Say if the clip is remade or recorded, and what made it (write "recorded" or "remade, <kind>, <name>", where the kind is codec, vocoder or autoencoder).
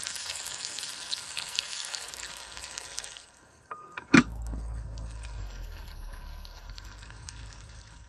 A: remade, codec, SNAC